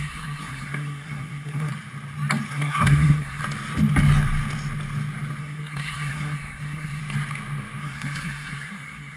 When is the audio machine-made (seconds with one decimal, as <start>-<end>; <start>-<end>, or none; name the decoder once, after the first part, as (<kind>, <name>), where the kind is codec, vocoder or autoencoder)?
0.0-1.7 (codec, SNAC); 2.5-3.4; 5.4-7.0; 7.8-9.2

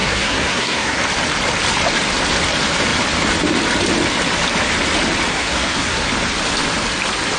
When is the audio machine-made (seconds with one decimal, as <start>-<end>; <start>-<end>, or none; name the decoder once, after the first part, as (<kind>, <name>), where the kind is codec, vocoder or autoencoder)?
0.0-1.0 (codec, SNAC); 5.3-6.1

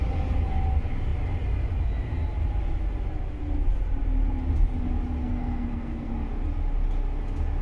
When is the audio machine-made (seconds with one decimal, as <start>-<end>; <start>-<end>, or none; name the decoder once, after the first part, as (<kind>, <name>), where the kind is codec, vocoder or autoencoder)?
5.2-6.1 (codec, SNAC)

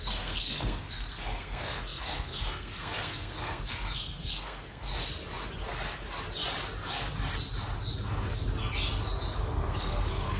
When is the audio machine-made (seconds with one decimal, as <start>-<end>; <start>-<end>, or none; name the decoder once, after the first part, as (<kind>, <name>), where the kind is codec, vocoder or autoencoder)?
0.0-4.9 (codec, SNAC); 9.4-10.4

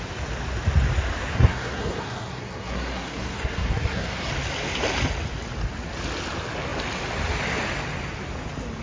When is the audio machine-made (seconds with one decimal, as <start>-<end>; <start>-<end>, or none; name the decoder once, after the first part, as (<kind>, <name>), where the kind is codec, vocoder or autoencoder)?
1.3-4.3 (codec, SNAC)